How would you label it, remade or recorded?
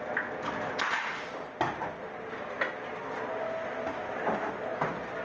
recorded